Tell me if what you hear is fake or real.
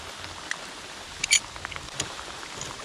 real